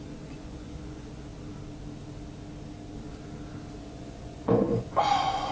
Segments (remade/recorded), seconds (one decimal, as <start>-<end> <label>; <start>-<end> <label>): 0.0-1.3 remade; 1.3-3.8 recorded; 3.8-5.5 remade